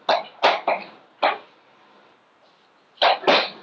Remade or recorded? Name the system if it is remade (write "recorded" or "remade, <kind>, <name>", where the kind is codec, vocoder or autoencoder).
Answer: recorded